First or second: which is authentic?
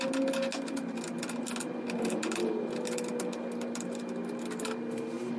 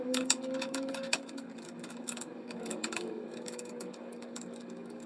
first